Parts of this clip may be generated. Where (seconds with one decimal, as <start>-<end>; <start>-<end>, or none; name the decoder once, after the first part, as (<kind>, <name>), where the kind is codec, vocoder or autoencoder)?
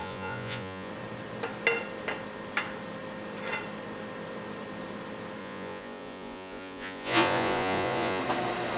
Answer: 0.0-0.9 (vocoder, Vocos); 5.4-8.2